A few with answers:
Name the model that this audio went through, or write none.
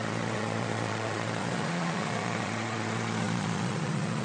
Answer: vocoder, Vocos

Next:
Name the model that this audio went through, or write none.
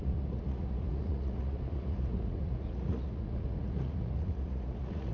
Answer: vocoder, Vocos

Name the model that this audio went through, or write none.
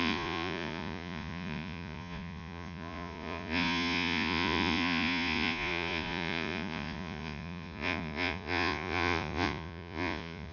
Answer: vocoder, Vocos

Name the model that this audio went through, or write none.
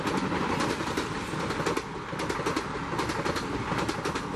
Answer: none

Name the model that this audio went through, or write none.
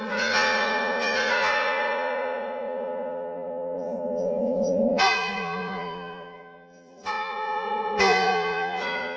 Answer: vocoder, Vocos